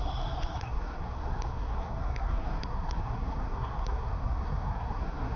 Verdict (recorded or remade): remade